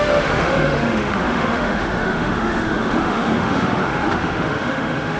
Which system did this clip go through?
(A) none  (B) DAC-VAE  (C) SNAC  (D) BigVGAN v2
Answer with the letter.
B